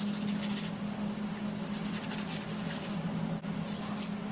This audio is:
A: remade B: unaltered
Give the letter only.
B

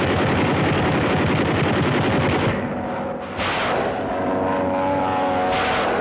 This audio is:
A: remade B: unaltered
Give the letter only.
B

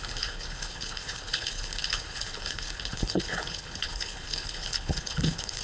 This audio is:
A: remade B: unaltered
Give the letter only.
A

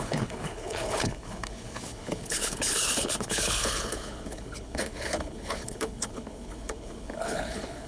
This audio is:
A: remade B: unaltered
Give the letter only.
A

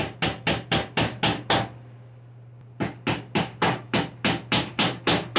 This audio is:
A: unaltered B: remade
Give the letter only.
A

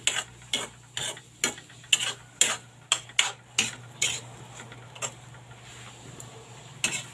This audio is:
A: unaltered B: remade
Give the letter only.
A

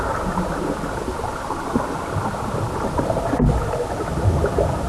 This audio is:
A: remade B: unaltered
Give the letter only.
B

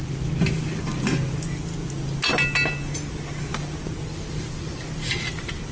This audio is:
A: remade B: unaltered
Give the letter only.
B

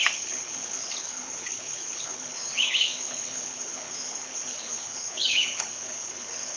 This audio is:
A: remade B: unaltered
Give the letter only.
A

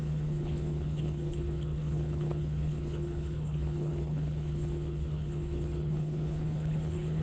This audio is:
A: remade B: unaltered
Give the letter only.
A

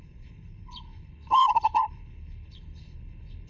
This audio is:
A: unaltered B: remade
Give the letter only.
B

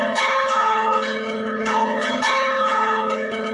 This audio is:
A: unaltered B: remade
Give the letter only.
B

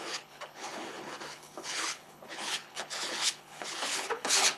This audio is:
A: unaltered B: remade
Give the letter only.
B